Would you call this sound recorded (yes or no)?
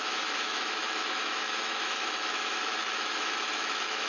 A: no